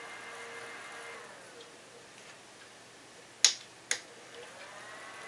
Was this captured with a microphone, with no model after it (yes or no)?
yes